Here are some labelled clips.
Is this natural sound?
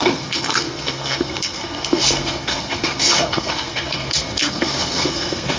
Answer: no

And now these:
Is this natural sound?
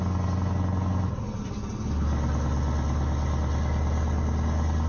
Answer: yes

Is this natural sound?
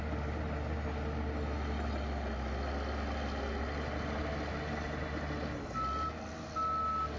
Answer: yes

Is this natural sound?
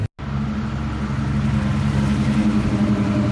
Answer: yes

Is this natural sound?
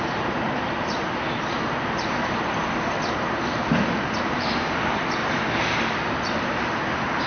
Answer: no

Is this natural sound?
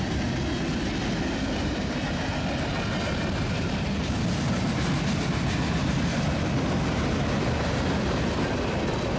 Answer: yes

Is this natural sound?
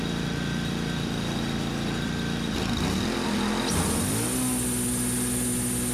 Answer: yes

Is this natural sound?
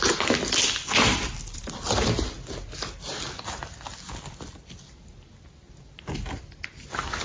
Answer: yes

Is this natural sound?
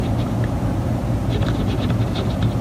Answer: yes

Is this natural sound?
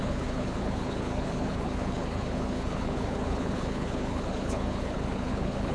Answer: no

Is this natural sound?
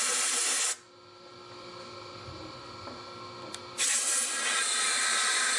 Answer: yes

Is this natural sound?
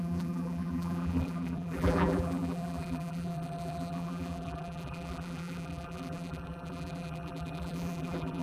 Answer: no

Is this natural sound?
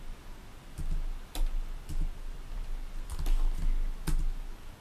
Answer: yes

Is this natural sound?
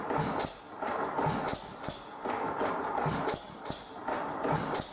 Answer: yes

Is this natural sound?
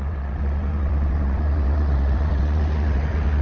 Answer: no